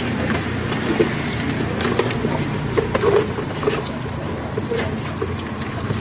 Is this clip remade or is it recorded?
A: remade